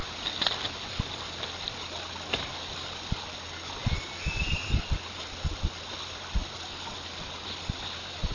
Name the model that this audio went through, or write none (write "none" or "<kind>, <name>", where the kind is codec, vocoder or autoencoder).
none